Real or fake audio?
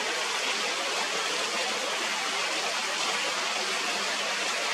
real